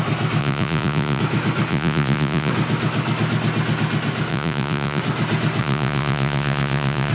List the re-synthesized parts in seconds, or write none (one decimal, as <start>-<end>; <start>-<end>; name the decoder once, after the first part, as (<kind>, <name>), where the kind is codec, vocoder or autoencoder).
0.4-1.2 (vocoder, Vocos); 1.7-2.5; 4.3-5.0; 5.6-7.1